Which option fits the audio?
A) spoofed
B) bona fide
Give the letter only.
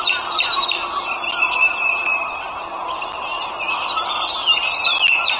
B